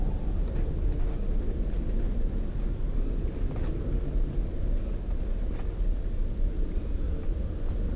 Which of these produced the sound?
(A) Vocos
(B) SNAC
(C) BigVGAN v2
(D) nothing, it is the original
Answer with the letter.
D